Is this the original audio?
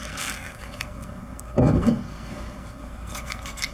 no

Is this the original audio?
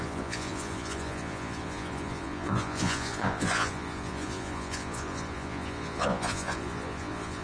no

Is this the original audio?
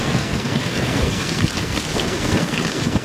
no